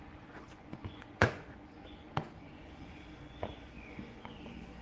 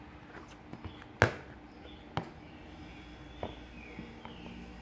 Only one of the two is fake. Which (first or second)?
first